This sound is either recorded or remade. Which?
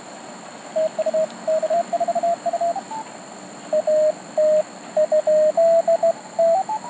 recorded